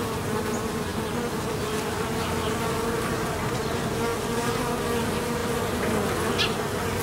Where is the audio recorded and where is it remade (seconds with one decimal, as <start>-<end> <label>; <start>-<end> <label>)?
0.0-7.0 recorded